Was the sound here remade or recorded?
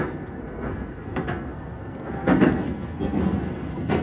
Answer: remade